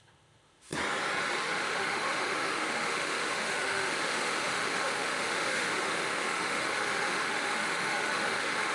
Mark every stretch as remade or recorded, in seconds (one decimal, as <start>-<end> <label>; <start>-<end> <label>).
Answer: 0.0-0.7 remade; 0.7-1.4 recorded; 1.4-8.7 remade